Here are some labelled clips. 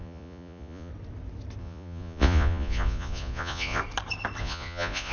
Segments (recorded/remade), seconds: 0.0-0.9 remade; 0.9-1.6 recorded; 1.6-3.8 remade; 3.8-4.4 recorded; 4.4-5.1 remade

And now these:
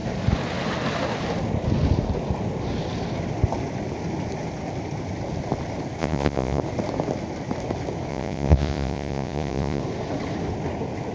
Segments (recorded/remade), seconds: 0.0-6.0 recorded; 6.0-6.6 remade; 6.6-8.1 recorded; 8.1-9.8 remade; 9.8-11.1 recorded

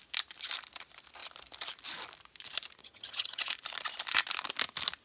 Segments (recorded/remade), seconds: 0.0-2.8 recorded; 2.8-3.5 remade; 3.5-5.0 recorded